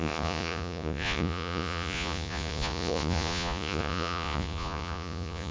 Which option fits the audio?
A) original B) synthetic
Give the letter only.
B